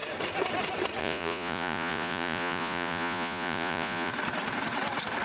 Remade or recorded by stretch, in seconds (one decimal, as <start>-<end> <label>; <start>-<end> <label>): 0.0-1.0 recorded; 1.0-4.1 remade; 4.1-5.2 recorded